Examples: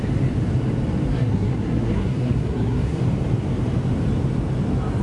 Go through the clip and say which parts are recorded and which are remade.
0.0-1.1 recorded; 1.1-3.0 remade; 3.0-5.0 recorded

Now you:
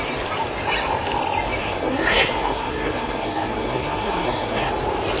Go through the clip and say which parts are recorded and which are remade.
0.0-1.6 recorded; 1.6-4.7 remade; 4.7-5.2 recorded